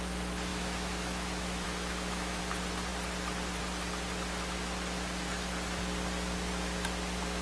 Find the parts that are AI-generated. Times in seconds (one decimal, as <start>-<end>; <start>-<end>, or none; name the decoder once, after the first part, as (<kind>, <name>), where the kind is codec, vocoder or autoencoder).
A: 0.5-2.4 (autoencoder, DAC-VAE)